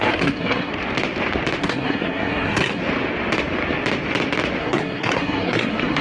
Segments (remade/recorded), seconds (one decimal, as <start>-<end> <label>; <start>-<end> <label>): 0.0-0.7 remade; 0.7-1.6 recorded; 1.6-2.8 remade; 2.8-4.6 recorded; 4.6-6.0 remade